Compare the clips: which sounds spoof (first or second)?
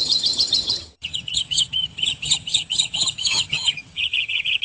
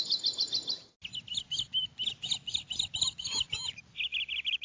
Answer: first